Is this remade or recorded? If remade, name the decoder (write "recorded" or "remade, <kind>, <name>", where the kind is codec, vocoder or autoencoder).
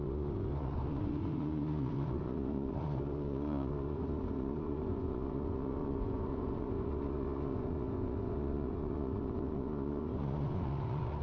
remade, vocoder, Vocos